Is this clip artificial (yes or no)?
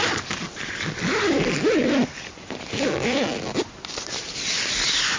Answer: no